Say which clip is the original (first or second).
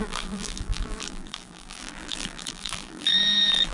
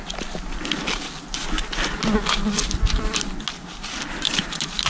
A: second